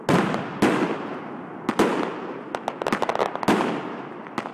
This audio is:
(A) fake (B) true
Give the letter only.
B